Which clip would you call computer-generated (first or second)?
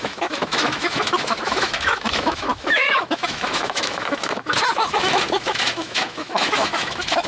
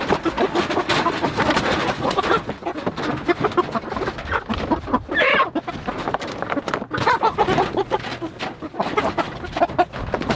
first